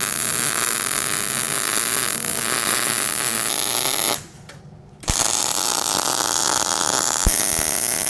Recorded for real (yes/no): yes